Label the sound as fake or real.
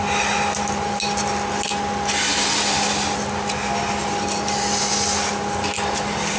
real